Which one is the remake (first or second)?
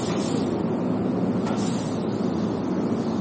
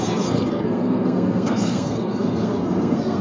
second